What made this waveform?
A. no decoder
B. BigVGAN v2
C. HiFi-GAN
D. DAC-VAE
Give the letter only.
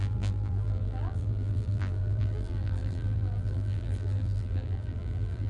B